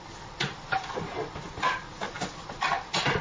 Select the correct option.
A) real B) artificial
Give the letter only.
A